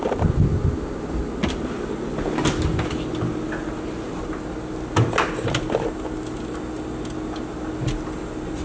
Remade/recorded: recorded